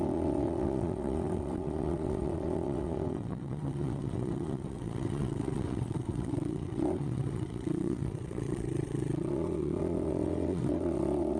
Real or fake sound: fake